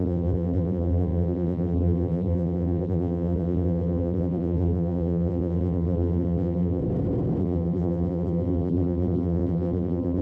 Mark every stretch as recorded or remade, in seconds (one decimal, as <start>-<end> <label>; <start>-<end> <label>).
0.0-6.8 remade; 6.8-7.4 recorded; 7.4-10.2 remade

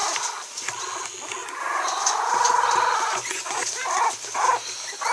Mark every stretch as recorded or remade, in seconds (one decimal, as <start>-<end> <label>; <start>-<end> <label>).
0.0-1.4 recorded; 1.4-3.6 remade; 3.6-5.1 recorded

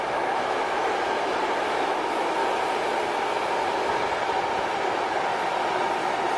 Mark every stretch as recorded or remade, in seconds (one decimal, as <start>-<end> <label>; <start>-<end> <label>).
0.0-0.8 remade; 0.8-1.6 recorded; 1.6-2.4 remade; 2.4-6.4 recorded

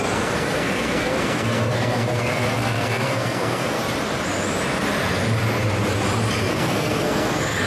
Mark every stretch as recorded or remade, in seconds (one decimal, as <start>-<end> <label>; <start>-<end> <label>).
0.0-3.8 remade; 3.8-6.4 recorded; 6.4-7.7 remade

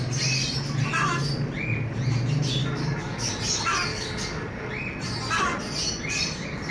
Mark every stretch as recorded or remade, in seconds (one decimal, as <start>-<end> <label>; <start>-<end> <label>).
0.0-2.6 recorded; 2.6-3.3 remade; 3.3-3.9 recorded; 3.9-4.7 remade; 4.7-6.7 recorded

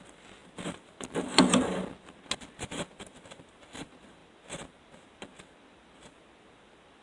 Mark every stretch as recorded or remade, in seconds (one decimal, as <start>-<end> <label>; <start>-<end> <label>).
0.0-7.0 recorded

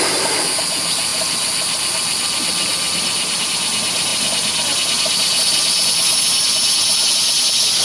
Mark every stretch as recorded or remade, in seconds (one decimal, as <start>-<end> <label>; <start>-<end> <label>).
0.0-7.8 recorded

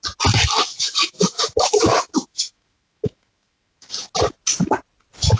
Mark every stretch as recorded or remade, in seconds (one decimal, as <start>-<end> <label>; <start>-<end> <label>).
0.0-0.7 recorded; 0.7-3.9 remade; 3.9-5.4 recorded